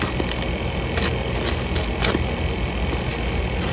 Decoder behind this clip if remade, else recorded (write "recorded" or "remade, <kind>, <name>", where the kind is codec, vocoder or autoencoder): recorded